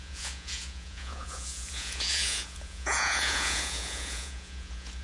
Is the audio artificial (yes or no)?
yes